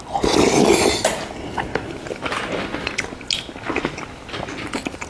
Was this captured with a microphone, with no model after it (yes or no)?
yes